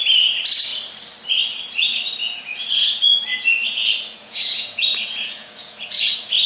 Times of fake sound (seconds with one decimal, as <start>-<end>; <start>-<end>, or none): 2.2-6.1